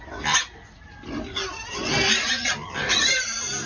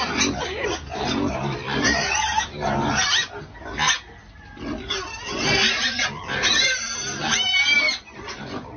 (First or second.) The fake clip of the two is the first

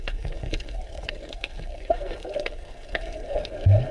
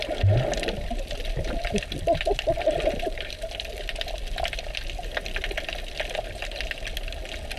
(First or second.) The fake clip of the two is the first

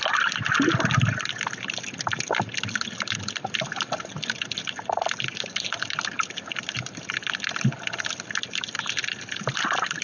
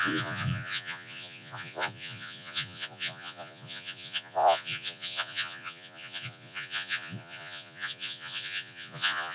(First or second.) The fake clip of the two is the second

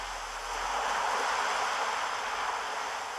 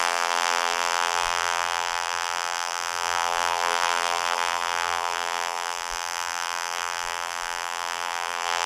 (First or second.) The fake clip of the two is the second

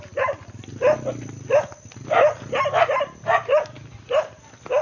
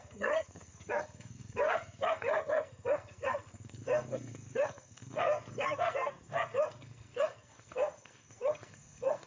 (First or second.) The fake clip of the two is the second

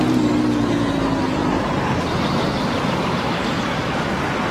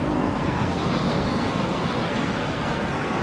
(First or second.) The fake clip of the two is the second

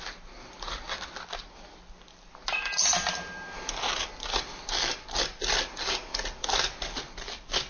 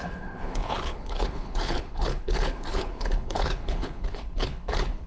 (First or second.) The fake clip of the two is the second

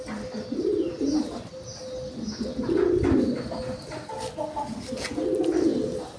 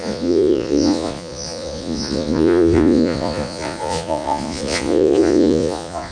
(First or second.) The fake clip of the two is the second